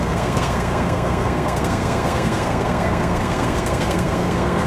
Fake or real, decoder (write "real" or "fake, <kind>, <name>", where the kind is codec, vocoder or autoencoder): fake, codec, SNAC